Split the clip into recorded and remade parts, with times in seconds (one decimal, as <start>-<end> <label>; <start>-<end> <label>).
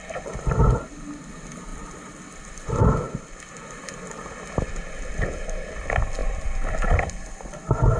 0.0-8.0 recorded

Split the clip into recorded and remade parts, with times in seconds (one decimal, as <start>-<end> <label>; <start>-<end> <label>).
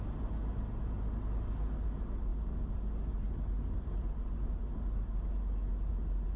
0.0-6.4 recorded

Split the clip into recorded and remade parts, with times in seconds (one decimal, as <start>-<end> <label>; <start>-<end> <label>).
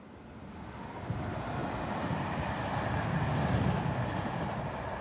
0.0-1.6 recorded; 1.6-4.6 remade; 4.6-5.0 recorded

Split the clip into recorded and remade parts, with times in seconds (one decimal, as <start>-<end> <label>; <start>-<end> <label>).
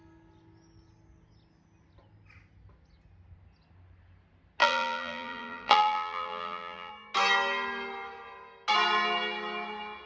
0.0-4.6 recorded; 4.6-6.9 remade; 6.9-10.1 recorded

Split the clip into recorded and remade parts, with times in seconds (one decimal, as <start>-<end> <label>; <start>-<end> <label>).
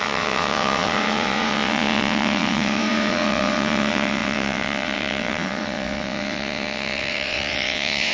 0.0-8.1 remade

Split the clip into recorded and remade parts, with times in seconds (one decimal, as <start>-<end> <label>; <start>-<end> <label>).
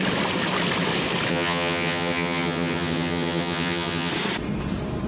0.0-1.3 recorded; 1.3-4.1 remade; 4.1-5.1 recorded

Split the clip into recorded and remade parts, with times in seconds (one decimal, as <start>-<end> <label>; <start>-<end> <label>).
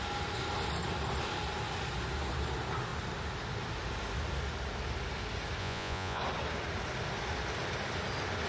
0.0-5.6 recorded; 5.6-6.2 remade; 6.2-8.5 recorded